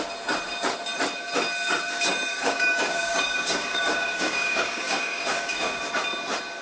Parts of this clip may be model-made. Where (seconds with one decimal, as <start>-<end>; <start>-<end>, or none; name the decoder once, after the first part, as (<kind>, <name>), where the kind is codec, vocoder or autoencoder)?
2.3-5.8 (codec, DAC)